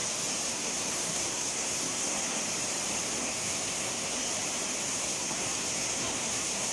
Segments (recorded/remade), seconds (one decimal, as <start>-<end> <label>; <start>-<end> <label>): 0.0-0.5 recorded; 0.5-2.4 remade; 2.4-3.2 recorded; 3.2-4.3 remade; 4.3-4.9 recorded; 4.9-6.7 remade